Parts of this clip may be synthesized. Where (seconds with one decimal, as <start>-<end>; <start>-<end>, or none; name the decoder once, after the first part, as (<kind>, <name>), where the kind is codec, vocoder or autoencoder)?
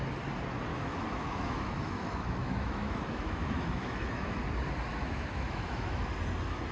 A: 0.7-4.4 (autoencoder, DAC-VAE); 4.9-6.1